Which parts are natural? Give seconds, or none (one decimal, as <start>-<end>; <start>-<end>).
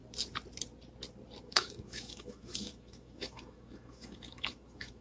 0.0-1.4